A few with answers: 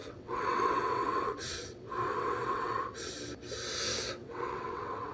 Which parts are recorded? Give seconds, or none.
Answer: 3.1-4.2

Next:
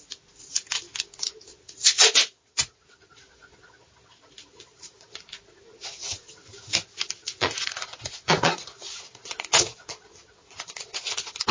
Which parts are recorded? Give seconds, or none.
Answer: 0.0-1.5; 5.2-7.2; 10.9-11.5

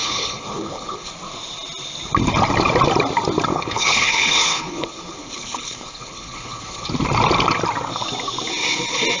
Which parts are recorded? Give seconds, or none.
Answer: 1.1-3.5; 6.9-9.2

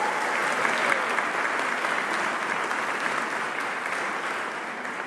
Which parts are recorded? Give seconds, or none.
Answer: 0.0-5.1

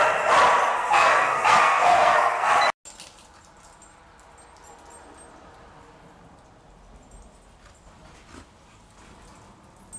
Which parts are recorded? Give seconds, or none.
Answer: 0.0-0.7; 2.5-10.0

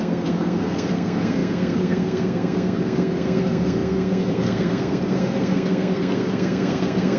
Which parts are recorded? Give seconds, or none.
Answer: none